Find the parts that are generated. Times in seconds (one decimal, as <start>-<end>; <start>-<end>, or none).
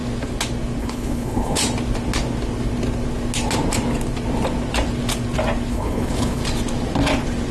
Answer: 0.8-1.6; 5.7-6.4